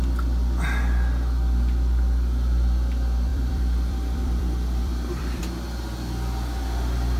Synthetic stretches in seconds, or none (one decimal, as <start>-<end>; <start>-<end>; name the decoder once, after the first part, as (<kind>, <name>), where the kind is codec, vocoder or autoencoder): 3.3-5.4 (vocoder, BigVGAN v2)